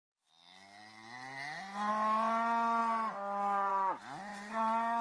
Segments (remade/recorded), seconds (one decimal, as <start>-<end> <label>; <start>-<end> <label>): 0.0-5.0 recorded